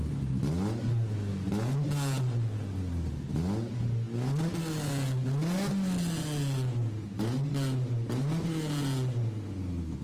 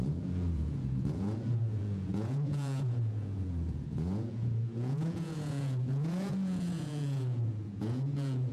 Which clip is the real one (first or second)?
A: first